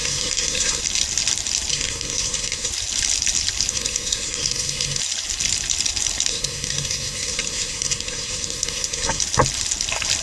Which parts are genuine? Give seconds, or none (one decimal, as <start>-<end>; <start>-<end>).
0.8-1.7; 2.7-3.7; 5.0-6.3; 9.2-10.2